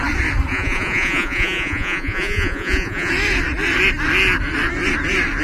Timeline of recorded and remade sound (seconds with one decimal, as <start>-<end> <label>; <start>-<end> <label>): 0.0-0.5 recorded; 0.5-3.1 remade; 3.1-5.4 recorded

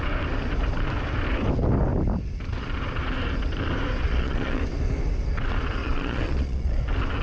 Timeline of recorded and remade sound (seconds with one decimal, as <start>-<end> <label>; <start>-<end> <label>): 0.0-4.0 recorded; 4.0-4.6 remade; 4.6-5.8 recorded; 5.8-6.8 remade; 6.8-7.2 recorded

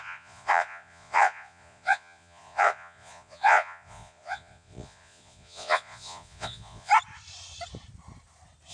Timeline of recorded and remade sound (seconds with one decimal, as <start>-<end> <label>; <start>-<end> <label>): 0.0-6.9 remade; 6.9-8.7 recorded

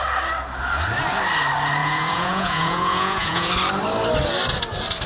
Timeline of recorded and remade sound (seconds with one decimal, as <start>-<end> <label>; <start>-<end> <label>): 0.0-1.8 recorded; 1.8-3.5 remade; 3.5-5.1 recorded

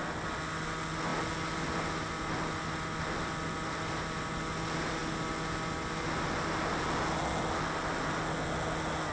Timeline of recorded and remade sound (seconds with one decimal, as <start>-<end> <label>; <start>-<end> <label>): 0.0-9.1 recorded

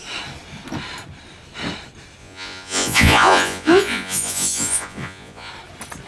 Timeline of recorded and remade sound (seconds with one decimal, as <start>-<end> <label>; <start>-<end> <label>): 0.0-2.2 recorded; 2.2-5.5 remade; 5.5-6.1 recorded

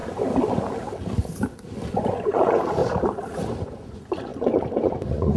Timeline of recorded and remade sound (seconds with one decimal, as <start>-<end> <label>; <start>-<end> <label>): 0.0-1.9 recorded; 1.9-2.8 remade; 2.8-3.6 recorded; 3.6-5.4 remade